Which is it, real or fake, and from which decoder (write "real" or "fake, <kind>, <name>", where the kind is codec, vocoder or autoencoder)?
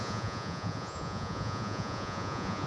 fake, vocoder, Vocos